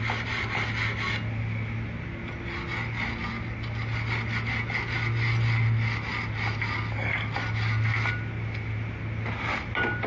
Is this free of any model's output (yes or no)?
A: yes